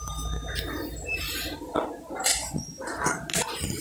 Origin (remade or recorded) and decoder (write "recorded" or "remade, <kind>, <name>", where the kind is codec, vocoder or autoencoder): recorded